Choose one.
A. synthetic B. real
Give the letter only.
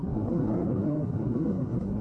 A